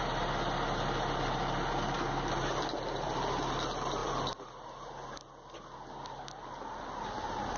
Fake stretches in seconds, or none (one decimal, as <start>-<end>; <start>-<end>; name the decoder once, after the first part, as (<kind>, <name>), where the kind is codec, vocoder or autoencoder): none